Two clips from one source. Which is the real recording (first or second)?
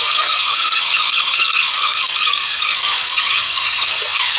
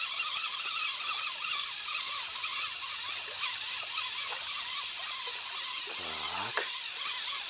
second